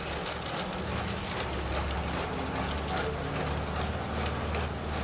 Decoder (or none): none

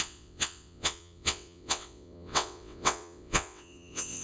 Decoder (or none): vocoder, WaveNeXt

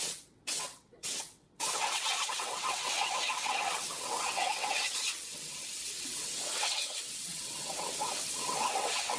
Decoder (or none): vocoder, WaveNeXt